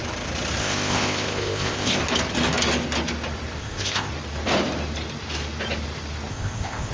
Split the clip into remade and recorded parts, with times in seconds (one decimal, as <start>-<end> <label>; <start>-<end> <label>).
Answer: 0.0-0.6 recorded; 0.6-2.0 remade; 2.0-3.6 recorded; 3.6-4.1 remade; 4.1-6.3 recorded; 6.3-6.9 remade